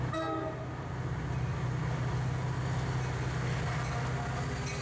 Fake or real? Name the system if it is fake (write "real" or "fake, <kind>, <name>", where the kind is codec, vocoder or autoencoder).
real